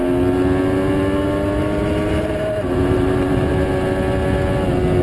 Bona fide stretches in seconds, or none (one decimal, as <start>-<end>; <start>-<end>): 0.0-1.6; 3.5-5.0